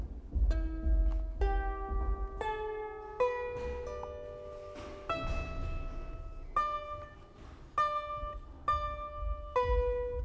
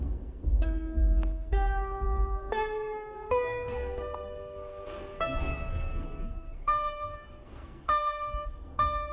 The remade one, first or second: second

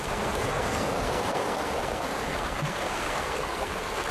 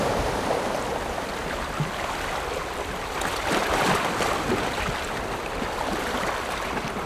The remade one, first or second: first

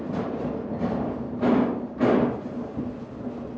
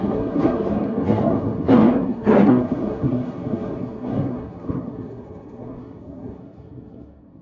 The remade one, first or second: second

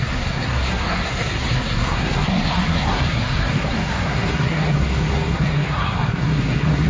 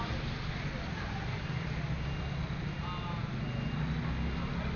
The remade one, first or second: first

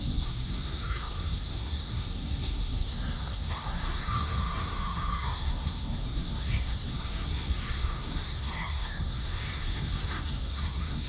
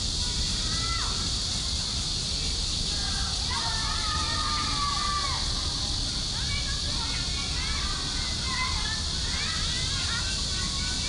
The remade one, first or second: first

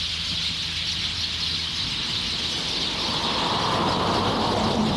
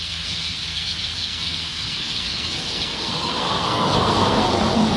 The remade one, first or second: second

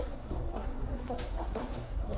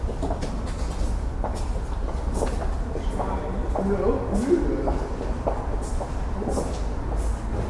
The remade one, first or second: first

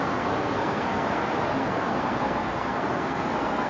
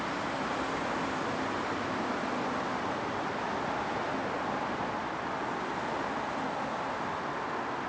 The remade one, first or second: first